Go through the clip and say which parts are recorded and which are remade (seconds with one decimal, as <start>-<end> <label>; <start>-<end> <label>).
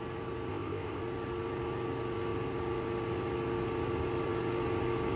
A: 0.0-0.5 recorded; 0.5-1.0 remade; 1.0-5.2 recorded